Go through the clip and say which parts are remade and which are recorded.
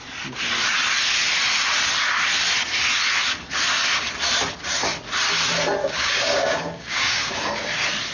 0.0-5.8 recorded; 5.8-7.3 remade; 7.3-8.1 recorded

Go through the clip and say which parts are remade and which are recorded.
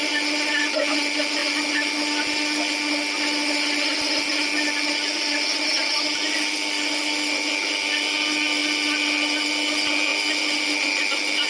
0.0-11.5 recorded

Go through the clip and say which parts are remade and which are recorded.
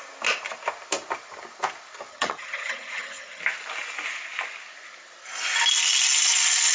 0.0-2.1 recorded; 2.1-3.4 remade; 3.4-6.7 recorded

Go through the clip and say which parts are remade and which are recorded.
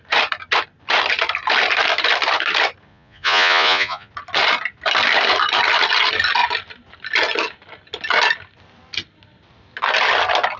0.0-2.9 recorded; 2.9-4.1 remade; 4.1-10.6 recorded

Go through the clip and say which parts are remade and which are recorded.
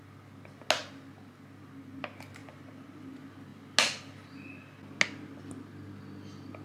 0.0-2.4 recorded; 2.4-3.1 remade; 3.1-6.6 recorded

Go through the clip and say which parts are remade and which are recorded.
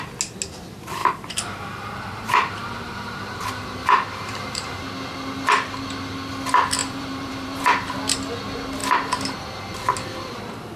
0.0-1.0 recorded; 1.0-4.8 remade; 4.8-6.8 recorded; 6.8-7.6 remade; 7.6-10.8 recorded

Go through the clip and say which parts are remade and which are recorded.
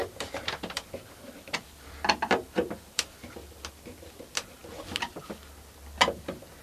0.0-3.2 remade; 3.2-6.6 recorded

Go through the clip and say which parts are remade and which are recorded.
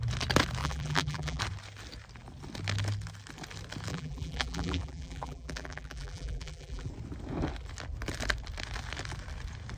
0.0-0.6 recorded; 0.6-1.4 remade; 1.4-3.9 recorded; 3.9-6.9 remade; 6.9-9.8 recorded